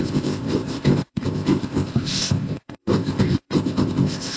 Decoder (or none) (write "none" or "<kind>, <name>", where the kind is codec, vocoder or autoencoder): codec, ZipCodec